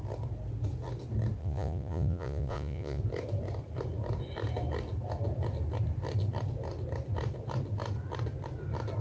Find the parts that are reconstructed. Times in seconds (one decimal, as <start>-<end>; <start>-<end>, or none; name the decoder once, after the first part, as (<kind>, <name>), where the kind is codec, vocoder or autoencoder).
1.4-3.0 (vocoder, Vocos)